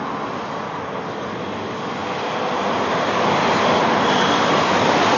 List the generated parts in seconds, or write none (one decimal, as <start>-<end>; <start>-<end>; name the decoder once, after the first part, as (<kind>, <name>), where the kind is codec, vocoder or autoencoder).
none